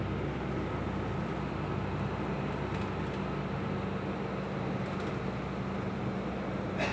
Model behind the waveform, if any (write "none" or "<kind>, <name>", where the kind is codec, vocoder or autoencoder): none